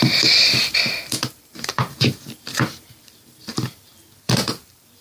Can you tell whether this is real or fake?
fake